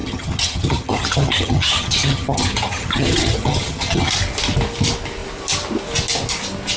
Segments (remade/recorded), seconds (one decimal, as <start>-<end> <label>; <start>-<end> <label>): 0.0-4.1 remade; 4.1-6.8 recorded